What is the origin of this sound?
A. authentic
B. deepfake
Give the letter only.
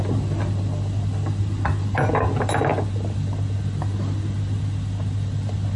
A